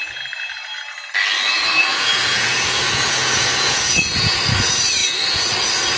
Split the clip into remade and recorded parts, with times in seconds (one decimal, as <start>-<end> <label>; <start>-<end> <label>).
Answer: 0.0-1.9 recorded; 1.9-4.4 remade; 4.4-5.0 recorded; 5.0-5.5 remade; 5.5-6.0 recorded